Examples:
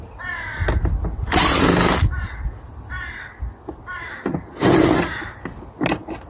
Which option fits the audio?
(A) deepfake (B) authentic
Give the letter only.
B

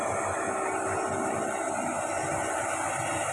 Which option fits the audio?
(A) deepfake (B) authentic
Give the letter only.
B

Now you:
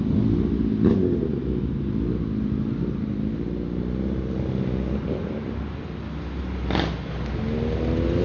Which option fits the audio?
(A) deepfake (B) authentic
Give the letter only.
B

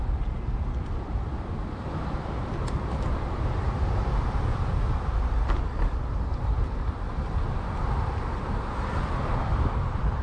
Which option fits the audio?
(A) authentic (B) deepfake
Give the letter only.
B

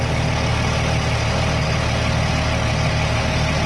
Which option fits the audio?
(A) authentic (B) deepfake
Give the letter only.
A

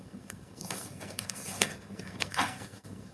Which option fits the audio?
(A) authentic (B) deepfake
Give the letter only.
B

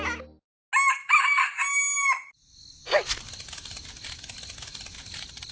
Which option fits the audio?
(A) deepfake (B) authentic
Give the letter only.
B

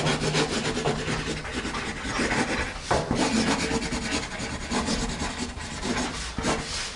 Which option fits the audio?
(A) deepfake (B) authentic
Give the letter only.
B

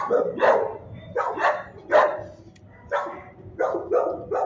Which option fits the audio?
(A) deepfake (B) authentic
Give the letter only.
B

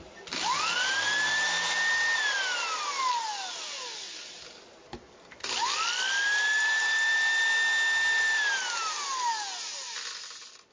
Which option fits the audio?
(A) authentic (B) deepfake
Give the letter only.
A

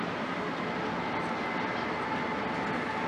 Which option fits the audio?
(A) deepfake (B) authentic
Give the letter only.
B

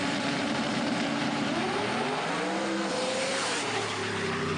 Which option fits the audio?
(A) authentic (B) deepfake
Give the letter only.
B